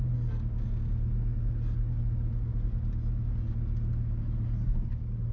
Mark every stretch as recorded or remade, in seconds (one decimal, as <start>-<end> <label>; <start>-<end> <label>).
0.0-5.3 recorded